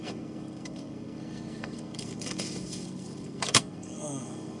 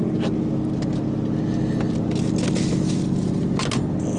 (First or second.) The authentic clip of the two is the second